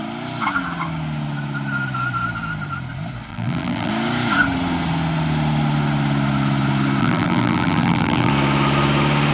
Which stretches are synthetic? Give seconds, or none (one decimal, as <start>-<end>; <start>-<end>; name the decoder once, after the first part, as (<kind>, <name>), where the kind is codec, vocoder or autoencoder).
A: 3.3-3.9 (vocoder, BigVGAN v2); 7.0-8.3